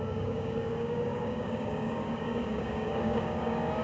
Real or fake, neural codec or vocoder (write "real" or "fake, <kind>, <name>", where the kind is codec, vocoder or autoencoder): fake, codec, DAC